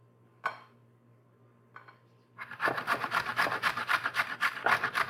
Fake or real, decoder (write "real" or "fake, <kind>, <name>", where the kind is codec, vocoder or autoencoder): fake, vocoder, BigVGAN v2